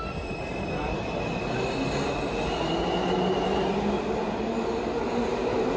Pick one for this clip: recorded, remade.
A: recorded